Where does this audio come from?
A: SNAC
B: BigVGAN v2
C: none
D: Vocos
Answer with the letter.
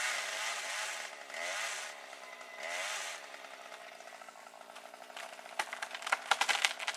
C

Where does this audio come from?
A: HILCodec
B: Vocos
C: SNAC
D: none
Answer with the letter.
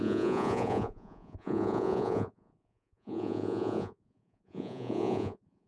B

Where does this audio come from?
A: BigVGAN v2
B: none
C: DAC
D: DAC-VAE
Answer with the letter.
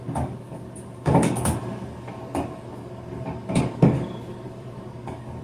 C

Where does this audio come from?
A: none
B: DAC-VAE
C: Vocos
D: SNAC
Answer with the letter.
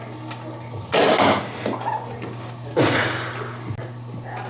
A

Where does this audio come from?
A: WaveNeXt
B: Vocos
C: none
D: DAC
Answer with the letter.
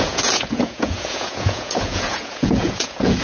B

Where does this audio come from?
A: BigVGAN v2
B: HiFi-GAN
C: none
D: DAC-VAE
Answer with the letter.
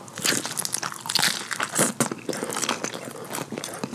C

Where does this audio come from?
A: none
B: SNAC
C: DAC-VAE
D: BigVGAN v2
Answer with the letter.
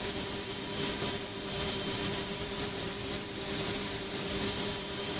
D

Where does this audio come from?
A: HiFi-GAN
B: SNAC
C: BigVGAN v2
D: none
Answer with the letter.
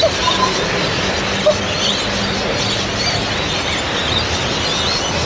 D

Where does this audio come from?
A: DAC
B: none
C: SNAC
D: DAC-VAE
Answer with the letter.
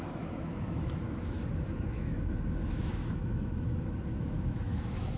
D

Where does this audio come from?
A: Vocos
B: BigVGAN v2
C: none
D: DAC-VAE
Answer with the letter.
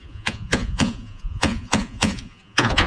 A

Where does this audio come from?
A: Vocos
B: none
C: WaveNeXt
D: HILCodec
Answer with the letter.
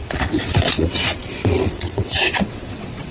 C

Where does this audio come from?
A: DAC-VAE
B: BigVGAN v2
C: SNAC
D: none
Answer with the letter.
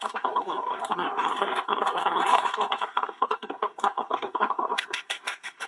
C